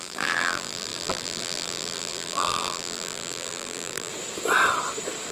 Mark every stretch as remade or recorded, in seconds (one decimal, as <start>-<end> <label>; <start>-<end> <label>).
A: 0.0-4.1 remade; 4.1-5.3 recorded